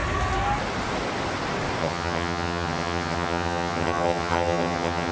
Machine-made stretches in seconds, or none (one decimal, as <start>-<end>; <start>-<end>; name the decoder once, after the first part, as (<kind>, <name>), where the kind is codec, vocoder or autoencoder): 1.8-5.1 (vocoder, HiFi-GAN)